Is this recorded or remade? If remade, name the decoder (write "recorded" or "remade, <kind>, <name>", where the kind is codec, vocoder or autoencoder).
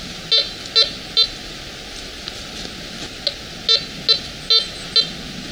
recorded